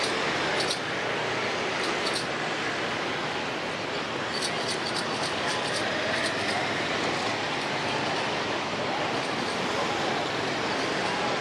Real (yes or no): yes